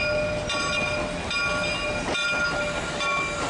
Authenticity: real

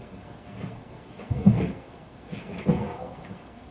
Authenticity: fake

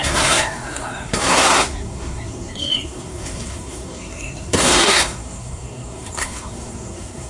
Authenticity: fake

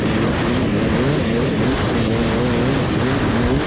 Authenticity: real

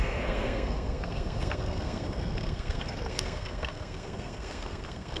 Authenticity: fake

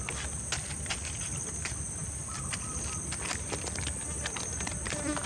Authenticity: real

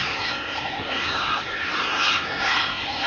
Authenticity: fake